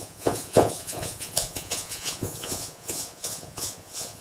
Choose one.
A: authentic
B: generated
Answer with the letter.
B